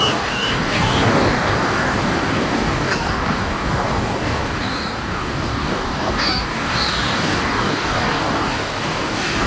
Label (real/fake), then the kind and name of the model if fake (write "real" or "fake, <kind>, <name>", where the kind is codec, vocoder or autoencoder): fake, codec, DAC